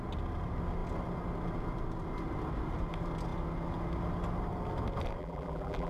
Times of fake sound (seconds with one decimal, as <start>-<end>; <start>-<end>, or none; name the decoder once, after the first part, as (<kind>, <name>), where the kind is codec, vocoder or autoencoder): 5.2-5.9 (vocoder, BigVGAN v2)